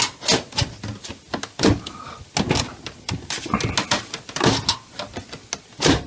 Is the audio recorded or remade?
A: recorded